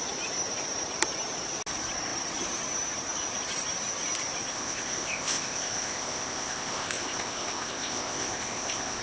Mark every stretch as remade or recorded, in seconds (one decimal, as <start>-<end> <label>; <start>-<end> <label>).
0.0-4.5 recorded; 4.5-9.0 remade